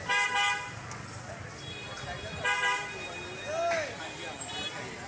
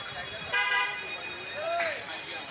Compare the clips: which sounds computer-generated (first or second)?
second